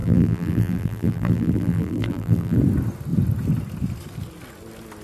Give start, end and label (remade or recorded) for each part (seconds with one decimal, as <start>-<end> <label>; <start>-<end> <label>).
0.0-2.6 remade; 2.6-5.0 recorded